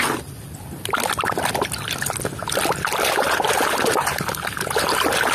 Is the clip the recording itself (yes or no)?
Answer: yes